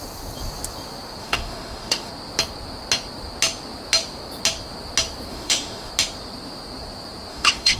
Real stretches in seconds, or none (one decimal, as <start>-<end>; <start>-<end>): 0.0-1.2; 2.1-5.3; 5.9-7.3